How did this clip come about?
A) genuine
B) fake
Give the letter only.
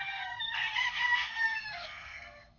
B